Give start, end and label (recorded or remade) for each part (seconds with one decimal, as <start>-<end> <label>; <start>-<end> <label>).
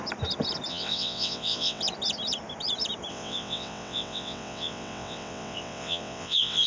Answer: 0.0-0.7 recorded; 0.7-1.8 remade; 1.8-3.1 recorded; 3.1-6.7 remade